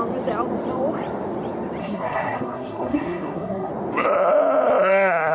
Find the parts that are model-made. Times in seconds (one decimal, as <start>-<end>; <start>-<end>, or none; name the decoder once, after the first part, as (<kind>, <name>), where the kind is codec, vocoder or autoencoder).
1.8-3.7 (codec, SNAC)